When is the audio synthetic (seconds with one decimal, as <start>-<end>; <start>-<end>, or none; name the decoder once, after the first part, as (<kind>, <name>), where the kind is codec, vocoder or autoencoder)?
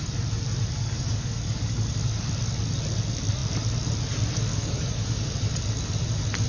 0.8-1.9 (codec, DAC); 4.5-5.5